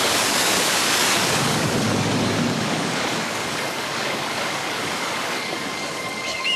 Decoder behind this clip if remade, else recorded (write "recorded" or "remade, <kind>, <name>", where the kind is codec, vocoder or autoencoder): remade, codec, DAC